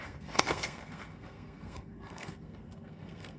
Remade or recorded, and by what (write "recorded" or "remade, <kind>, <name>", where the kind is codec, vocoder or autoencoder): remade, codec, SNAC